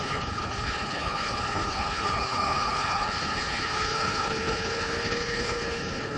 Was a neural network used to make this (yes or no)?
yes